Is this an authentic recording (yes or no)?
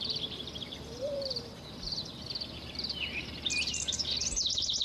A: no